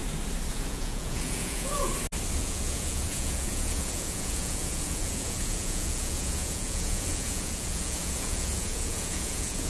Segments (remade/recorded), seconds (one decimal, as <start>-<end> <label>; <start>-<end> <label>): 0.0-0.5 recorded; 0.5-1.9 remade; 1.9-2.4 recorded; 2.4-9.7 remade